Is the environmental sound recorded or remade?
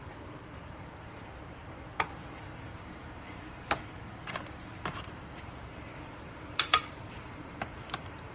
remade